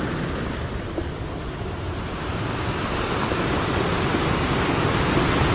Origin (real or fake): real